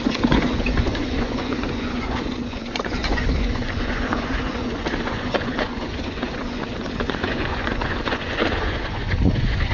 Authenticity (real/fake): fake